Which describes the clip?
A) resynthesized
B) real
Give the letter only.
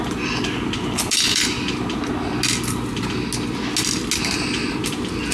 B